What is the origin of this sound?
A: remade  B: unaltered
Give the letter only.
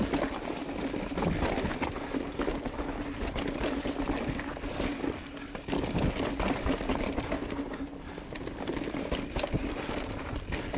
B